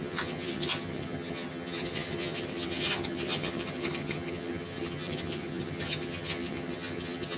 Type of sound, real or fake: fake